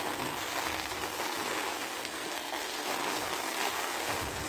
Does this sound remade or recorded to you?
remade